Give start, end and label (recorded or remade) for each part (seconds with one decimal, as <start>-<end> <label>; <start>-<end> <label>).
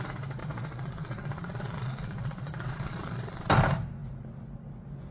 0.0-0.4 recorded; 0.4-3.5 remade; 3.5-5.1 recorded